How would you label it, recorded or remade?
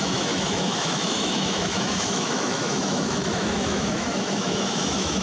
remade